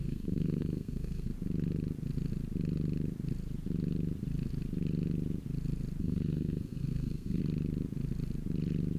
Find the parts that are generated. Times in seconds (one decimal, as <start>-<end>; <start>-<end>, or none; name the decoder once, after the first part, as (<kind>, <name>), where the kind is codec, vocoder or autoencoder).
0.0-1.3 (codec, SNAC); 6.0-7.4

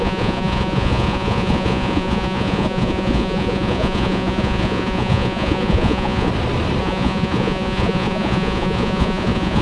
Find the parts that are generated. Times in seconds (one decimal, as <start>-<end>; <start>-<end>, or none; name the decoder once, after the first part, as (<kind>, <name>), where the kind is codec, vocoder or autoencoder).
0.0-6.3 (vocoder, Vocos); 6.8-9.6

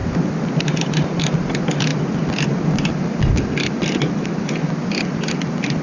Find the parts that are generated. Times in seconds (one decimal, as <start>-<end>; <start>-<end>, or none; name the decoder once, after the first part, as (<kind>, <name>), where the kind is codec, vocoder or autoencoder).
none

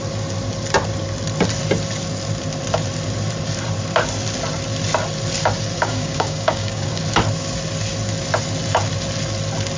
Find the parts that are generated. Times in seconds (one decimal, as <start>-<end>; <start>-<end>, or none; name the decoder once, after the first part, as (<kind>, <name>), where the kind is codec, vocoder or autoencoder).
5.7-7.0 (codec, DAC)